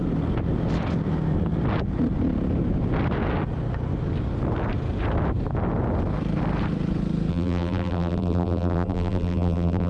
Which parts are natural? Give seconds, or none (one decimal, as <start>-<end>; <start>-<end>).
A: 0.0-7.3